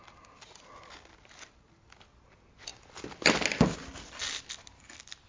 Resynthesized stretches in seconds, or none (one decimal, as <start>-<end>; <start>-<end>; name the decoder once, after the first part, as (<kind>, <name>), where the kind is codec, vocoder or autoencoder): none